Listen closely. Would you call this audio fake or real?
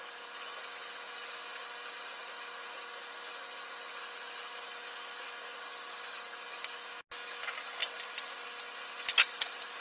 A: real